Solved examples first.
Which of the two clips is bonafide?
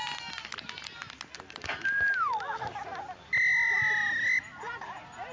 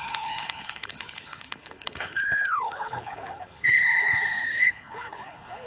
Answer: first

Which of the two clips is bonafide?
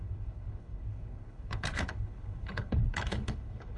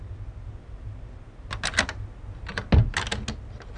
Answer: second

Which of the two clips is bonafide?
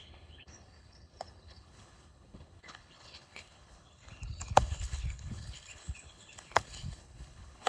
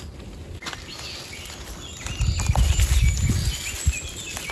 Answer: second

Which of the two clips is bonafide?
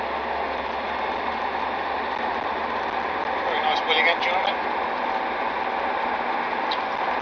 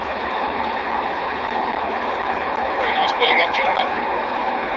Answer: first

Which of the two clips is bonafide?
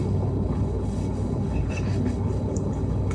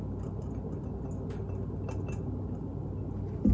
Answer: second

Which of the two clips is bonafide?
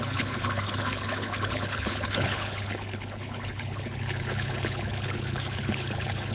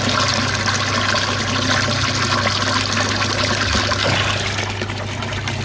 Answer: second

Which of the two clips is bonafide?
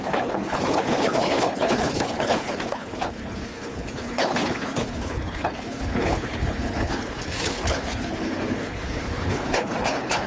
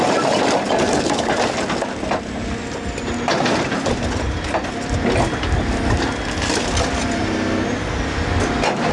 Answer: second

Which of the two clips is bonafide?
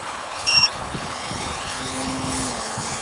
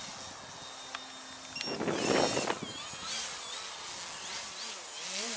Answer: second